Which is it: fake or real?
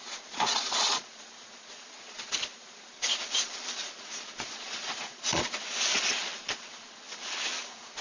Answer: fake